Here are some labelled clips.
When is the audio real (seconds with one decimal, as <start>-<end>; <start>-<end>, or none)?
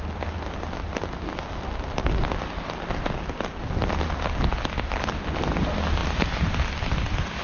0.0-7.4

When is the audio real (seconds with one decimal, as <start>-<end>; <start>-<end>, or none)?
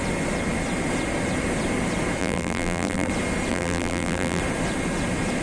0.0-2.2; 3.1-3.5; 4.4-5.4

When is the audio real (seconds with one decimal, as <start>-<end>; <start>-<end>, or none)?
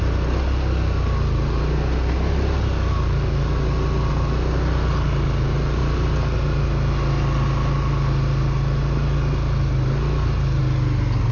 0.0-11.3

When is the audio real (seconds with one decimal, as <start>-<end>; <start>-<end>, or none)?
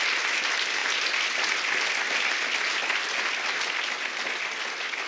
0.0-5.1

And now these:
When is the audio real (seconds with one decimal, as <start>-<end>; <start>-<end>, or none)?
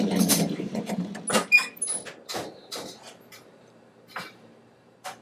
1.1-2.4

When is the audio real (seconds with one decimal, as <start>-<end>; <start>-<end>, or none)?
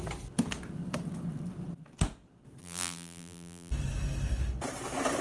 0.0-2.6; 3.7-5.2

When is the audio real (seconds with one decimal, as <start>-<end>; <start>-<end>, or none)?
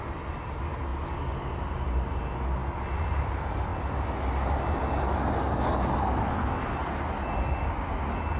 0.0-8.4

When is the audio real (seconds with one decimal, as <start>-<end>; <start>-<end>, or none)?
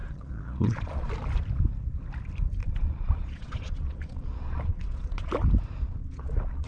1.1-2.6; 5.3-5.9